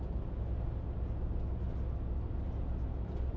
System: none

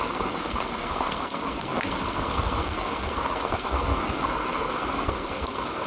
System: codec, SNAC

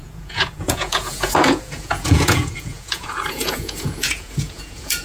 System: vocoder, Vocos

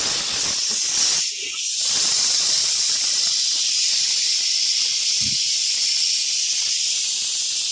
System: none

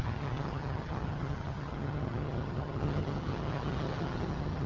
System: vocoder, HiFi-GAN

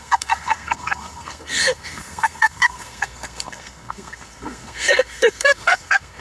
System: codec, SNAC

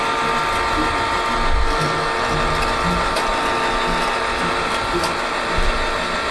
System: none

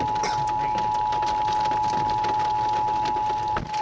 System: none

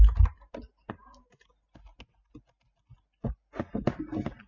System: none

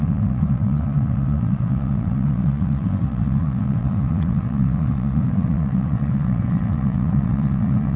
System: vocoder, WaveNeXt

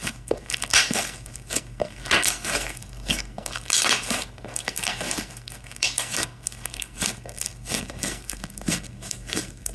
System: codec, SNAC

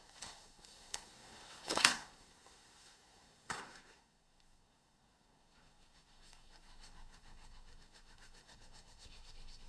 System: codec, SNAC